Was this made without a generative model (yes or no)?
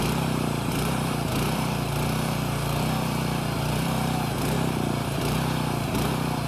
no